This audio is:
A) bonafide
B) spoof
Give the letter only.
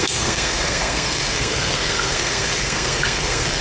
B